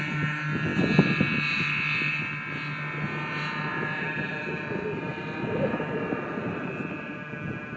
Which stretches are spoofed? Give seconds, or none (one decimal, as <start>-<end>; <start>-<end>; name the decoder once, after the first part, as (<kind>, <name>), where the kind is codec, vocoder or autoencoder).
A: 3.7-7.3 (vocoder, BigVGAN v2)